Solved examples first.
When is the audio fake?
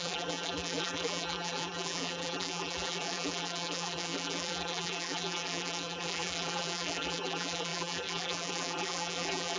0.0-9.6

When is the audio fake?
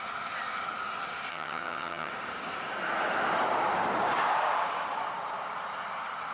1.3-2.1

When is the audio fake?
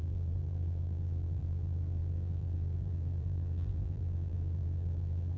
0.0-5.4